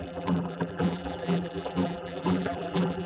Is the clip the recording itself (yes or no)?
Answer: no